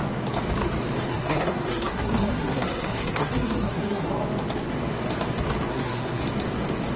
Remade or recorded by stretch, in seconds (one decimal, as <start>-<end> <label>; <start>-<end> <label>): 0.0-1.1 recorded; 1.1-4.1 remade; 4.1-5.7 recorded; 5.7-6.2 remade; 6.2-7.0 recorded